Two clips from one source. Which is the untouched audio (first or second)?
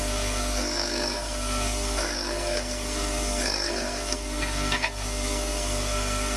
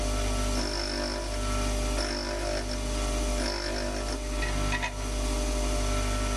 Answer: second